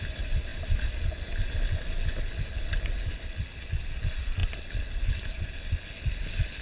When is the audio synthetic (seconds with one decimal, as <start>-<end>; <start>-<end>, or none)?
none